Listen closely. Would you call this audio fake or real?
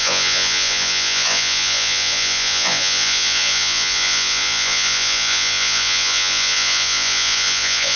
fake